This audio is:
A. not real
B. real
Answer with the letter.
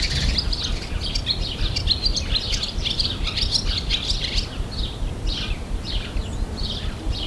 A